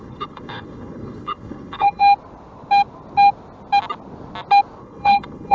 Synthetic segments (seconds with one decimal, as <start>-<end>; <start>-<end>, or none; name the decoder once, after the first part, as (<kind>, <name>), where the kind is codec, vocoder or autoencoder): 0.0-2.0 (codec, HILCodec); 4.8-5.5

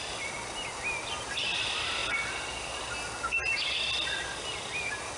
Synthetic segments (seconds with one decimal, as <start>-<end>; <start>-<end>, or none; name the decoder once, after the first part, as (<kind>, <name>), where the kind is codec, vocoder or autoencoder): none